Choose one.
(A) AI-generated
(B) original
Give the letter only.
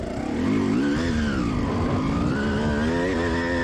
B